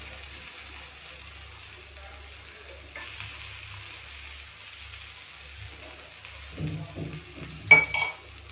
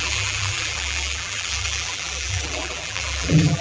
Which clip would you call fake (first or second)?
second